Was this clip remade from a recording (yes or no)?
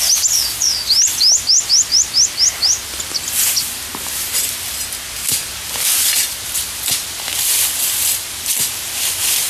no